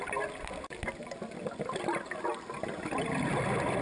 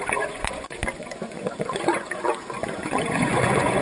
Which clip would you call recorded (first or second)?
first